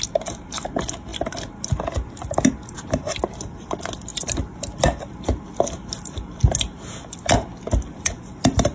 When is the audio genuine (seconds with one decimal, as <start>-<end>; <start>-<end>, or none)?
0.0-8.7